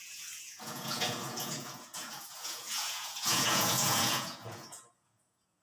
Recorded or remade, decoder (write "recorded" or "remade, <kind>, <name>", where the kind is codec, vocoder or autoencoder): remade, vocoder, Vocos